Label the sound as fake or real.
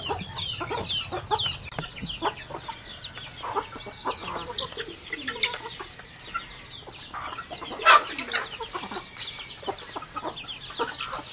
real